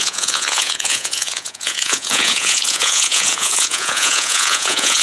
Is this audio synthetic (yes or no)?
yes